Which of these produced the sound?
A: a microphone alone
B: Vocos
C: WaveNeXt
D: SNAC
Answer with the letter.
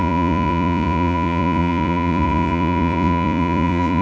B